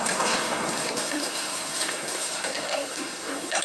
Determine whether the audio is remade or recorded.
remade